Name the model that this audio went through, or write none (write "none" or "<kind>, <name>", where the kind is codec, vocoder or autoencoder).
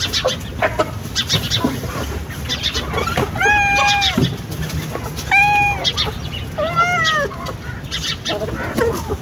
none